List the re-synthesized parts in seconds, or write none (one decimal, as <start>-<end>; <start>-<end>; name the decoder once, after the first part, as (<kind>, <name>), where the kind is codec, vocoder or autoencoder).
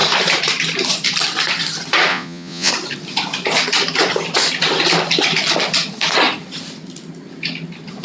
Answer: 2.1-2.7 (vocoder, Vocos)